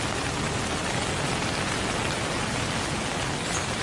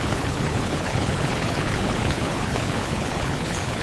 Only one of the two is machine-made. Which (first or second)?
second